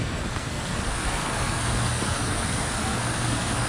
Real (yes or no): no